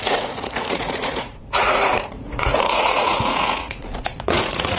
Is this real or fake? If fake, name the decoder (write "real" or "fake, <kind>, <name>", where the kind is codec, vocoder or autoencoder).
fake, vocoder, Vocos